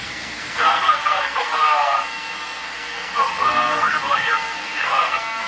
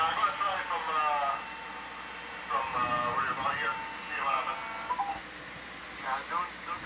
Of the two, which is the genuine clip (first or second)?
second